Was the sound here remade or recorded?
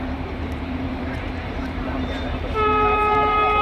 remade